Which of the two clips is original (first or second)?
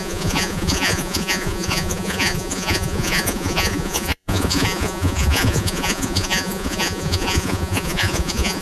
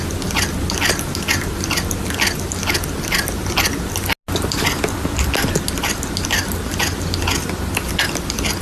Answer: second